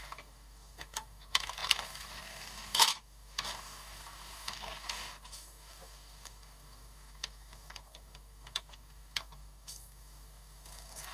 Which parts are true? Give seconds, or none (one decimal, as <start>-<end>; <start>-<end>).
none